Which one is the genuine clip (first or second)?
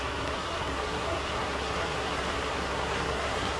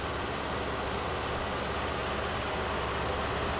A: second